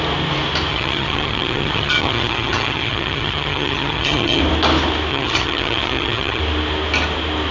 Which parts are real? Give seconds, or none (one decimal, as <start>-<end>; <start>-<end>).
0.0-0.7; 4.4-5.1; 6.4-7.5

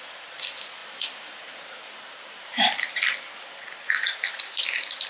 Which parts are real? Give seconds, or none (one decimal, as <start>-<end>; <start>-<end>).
0.0-5.1